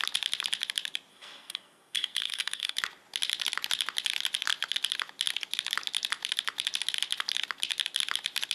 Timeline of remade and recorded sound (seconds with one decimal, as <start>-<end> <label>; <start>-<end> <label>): 0.0-1.1 recorded; 1.1-2.8 remade; 2.8-8.5 recorded